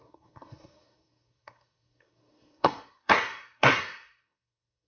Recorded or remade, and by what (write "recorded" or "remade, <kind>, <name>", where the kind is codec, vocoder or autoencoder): remade, codec, SNAC